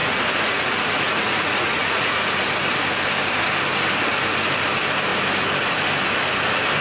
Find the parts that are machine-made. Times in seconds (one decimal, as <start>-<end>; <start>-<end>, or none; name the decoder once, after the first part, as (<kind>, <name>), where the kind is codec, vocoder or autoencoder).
0.0-2.2 (vocoder, Vocos)

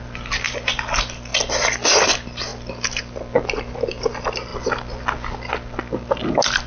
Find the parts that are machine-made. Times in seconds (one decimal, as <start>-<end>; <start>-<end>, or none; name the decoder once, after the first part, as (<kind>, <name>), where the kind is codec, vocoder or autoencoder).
1.3-2.1 (vocoder, BigVGAN v2)

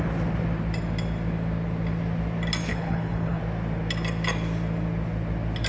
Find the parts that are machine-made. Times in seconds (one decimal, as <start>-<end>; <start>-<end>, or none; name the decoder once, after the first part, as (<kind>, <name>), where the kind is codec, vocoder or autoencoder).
2.7-3.4 (codec, HILCodec)

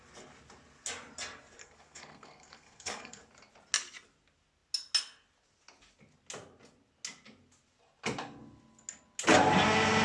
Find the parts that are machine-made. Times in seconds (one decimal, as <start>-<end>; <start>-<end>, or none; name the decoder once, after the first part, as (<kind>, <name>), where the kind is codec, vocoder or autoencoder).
1.6-3.2 (codec, SNAC)